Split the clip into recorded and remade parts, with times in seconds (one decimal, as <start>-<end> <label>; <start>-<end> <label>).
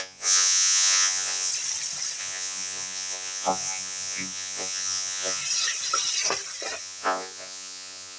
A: 0.0-1.5 remade; 1.5-2.2 recorded; 2.2-5.4 remade; 5.4-6.8 recorded; 6.8-8.2 remade